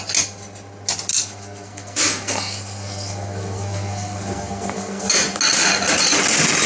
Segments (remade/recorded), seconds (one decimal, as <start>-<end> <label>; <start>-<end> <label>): 0.0-1.1 recorded; 1.1-5.1 remade; 5.1-6.7 recorded